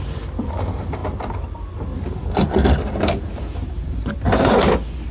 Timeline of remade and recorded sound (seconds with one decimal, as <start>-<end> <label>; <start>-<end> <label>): 0.0-5.1 recorded

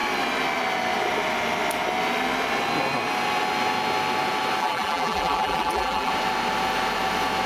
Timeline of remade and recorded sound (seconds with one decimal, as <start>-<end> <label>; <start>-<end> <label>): 0.0-4.6 recorded; 4.6-6.1 remade; 6.1-7.5 recorded

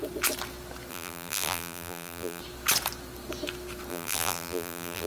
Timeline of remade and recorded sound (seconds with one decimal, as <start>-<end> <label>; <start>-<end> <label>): 0.0-0.9 recorded; 0.9-2.4 remade; 2.4-3.9 recorded; 3.9-5.1 remade

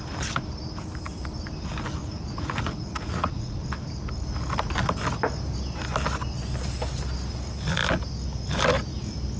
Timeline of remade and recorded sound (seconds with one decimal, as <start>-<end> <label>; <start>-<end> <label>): 0.0-2.0 recorded; 2.0-3.6 remade; 3.6-9.4 recorded

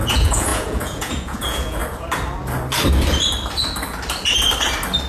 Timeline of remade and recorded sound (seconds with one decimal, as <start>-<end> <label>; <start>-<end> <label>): 0.0-1.8 remade; 1.8-5.1 recorded

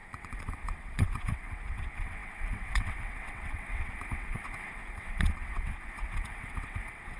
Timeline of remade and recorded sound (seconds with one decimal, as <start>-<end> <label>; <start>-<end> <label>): 0.0-7.2 remade